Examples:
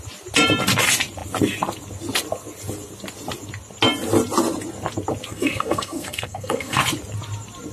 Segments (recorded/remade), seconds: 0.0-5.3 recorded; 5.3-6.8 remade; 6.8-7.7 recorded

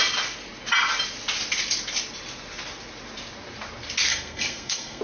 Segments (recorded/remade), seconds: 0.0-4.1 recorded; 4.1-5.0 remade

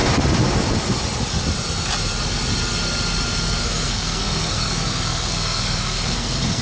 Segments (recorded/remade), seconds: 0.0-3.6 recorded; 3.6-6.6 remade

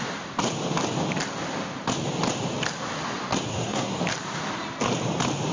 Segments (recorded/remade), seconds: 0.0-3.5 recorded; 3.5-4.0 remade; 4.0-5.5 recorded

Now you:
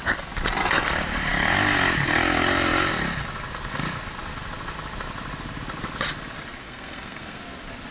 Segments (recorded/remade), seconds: 0.0-6.6 recorded; 6.6-7.4 remade; 7.4-7.9 recorded